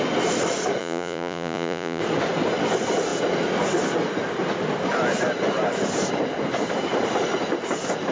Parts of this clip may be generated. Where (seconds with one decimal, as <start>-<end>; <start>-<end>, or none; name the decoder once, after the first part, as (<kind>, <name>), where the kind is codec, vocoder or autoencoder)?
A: 0.8-2.0 (vocoder, Vocos)